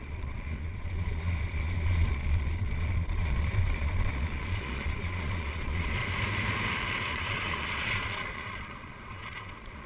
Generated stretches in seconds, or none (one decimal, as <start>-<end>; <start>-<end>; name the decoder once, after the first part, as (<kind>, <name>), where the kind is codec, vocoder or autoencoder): 0.0-6.0 (vocoder, Vocos); 7.1-9.9